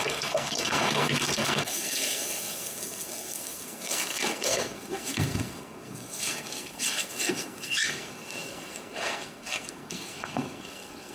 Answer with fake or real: fake